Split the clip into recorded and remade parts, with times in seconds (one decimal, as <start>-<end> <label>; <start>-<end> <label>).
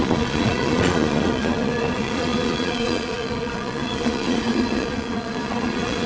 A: 0.0-6.1 remade